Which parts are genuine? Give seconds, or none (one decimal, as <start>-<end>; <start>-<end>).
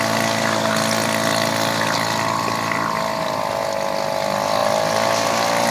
0.0-5.7